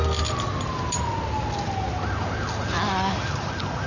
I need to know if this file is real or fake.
real